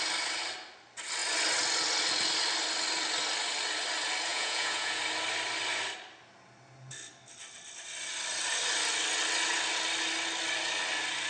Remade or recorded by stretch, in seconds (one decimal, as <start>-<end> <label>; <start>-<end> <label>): 0.0-4.3 recorded; 4.3-5.0 remade; 5.0-11.3 recorded